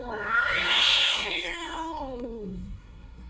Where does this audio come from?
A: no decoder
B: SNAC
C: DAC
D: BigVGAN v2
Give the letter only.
B